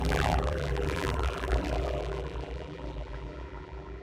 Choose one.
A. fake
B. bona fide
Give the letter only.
A